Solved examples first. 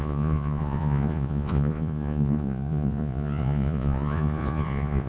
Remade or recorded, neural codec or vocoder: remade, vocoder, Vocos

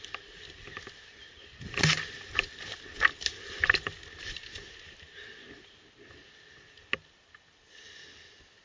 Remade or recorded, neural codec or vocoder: recorded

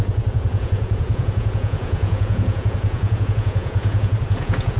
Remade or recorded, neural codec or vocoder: remade, vocoder, Vocos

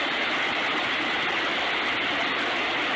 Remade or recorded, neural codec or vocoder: recorded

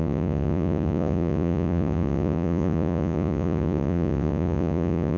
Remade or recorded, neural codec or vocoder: remade, vocoder, Vocos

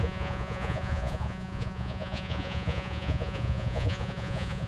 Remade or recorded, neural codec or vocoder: remade, vocoder, Vocos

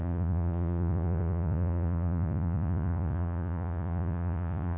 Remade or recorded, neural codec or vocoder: remade, vocoder, Vocos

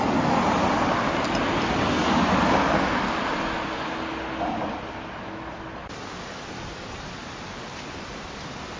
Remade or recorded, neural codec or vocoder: recorded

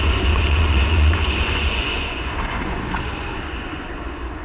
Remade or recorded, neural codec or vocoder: remade, vocoder, Vocos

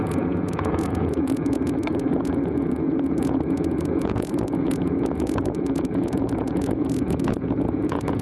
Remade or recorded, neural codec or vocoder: remade, vocoder, Vocos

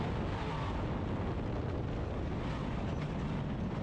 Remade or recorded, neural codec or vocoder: recorded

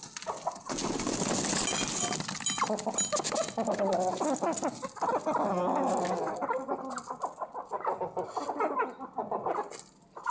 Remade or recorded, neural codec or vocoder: recorded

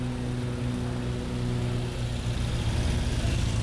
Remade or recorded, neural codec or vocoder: recorded